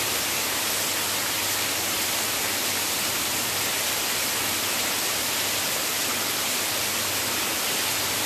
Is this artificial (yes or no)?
no